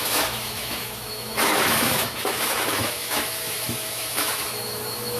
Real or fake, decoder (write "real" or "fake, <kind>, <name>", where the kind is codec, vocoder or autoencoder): fake, autoencoder, DAC-VAE